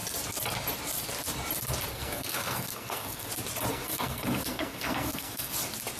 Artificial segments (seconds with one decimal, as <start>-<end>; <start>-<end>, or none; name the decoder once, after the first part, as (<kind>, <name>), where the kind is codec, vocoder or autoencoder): 1.9-3.3 (codec, SNAC); 3.7-5.6